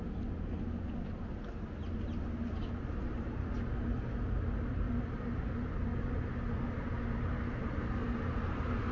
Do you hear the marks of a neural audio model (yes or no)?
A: no